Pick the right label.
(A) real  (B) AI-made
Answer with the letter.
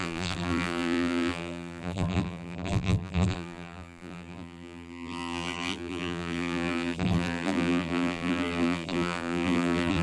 B